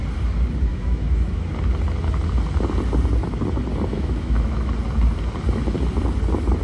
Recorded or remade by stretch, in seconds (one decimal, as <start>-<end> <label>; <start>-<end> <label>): 0.0-0.7 recorded; 0.7-1.5 remade; 1.5-3.9 recorded; 3.9-4.7 remade; 4.7-6.6 recorded